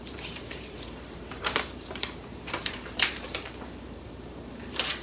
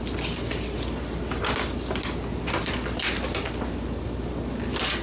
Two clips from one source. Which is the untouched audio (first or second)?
second